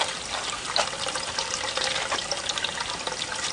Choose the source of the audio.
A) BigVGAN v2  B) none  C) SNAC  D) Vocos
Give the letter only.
B